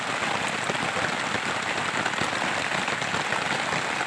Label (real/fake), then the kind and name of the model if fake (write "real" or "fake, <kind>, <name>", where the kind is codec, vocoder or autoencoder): real